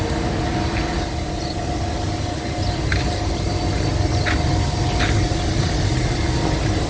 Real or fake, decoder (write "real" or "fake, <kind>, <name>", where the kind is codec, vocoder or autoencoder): real